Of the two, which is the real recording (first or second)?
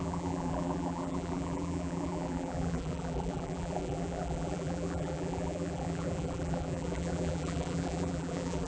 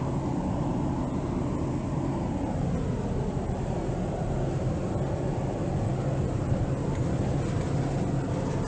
second